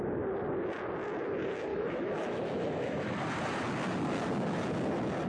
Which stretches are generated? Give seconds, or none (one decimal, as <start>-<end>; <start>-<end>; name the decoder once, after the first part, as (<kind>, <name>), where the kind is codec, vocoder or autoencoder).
1.7-3.1 (autoencoder, DAC-VAE)